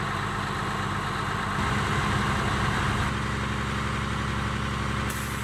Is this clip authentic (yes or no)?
yes